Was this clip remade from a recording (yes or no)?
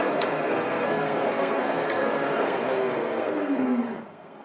yes